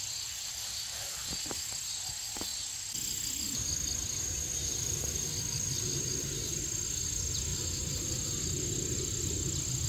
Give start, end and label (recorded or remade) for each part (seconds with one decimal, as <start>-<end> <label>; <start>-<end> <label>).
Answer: 0.0-7.5 recorded; 7.5-8.2 remade; 8.2-9.9 recorded

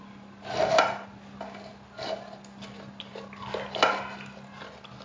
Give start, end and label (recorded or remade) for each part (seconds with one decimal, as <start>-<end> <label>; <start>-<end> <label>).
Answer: 0.0-5.0 recorded

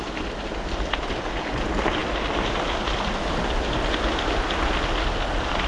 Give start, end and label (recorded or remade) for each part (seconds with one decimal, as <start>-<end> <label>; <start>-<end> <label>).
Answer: 0.0-5.7 recorded

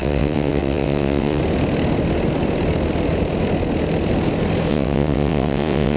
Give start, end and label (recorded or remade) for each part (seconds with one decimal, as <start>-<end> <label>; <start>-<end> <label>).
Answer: 0.0-1.4 remade; 1.4-4.7 recorded; 4.7-6.0 remade

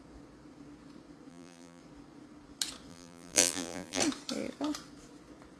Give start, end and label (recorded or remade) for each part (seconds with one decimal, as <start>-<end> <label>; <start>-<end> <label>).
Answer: 0.0-1.3 recorded; 1.3-1.8 remade; 1.8-2.9 recorded; 2.9-4.0 remade; 4.0-5.6 recorded